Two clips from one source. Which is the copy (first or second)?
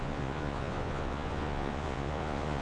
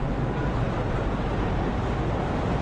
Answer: first